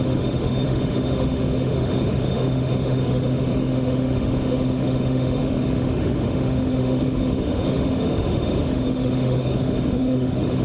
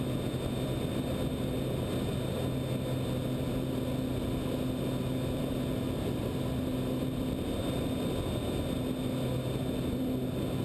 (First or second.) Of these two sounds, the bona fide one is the second